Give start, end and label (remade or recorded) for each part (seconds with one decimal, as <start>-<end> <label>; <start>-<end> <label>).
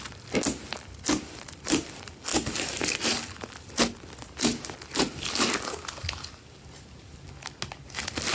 0.0-2.3 recorded; 2.3-2.9 remade; 2.9-8.3 recorded